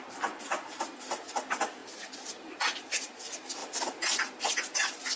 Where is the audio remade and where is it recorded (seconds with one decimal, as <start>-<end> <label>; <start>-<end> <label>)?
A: 0.0-5.2 recorded